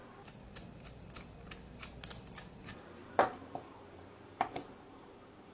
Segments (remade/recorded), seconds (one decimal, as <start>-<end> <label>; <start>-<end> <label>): 0.0-3.2 recorded; 3.2-5.5 remade